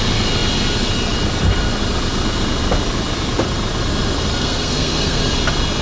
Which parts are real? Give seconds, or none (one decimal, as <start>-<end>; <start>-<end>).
0.0-4.3; 5.2-5.8

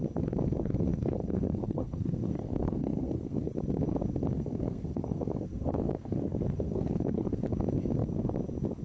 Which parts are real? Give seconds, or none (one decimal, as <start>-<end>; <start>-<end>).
0.0-0.8; 3.5-4.3; 7.4-8.8

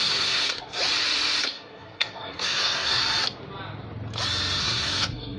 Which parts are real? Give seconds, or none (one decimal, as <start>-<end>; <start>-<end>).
0.8-1.4; 3.0-4.6